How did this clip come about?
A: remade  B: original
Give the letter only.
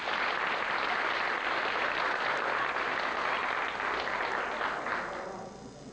B